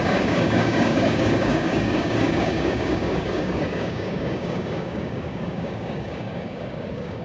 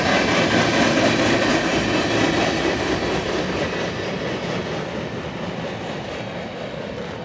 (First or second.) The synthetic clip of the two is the first